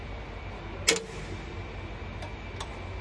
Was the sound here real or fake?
real